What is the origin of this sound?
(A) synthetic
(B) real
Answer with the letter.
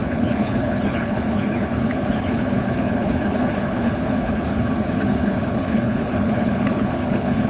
A